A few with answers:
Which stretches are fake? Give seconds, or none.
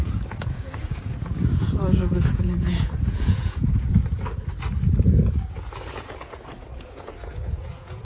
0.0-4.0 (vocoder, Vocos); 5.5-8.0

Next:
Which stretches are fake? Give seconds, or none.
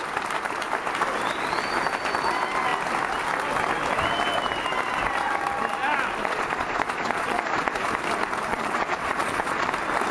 6.2-7.9 (vocoder, Vocos); 8.5-9.7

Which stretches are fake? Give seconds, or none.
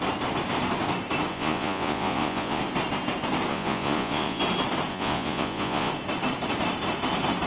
1.3-2.6 (vocoder, Vocos); 3.5-4.4; 4.9-5.9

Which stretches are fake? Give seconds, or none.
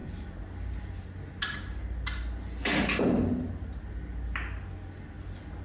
none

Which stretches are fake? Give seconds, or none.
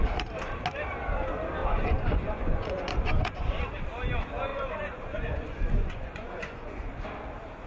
1.6-3.6 (vocoder, Vocos); 4.5-6.9